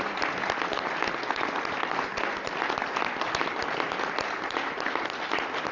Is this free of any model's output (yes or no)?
yes